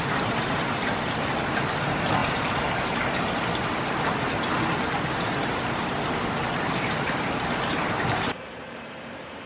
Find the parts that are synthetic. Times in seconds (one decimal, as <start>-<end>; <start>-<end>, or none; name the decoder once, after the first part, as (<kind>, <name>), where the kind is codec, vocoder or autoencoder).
0.0-2.2 (vocoder, BigVGAN v2); 5.5-9.5